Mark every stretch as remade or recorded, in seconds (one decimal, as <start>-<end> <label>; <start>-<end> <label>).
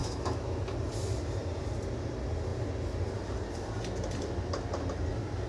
0.0-0.6 remade; 0.6-5.5 recorded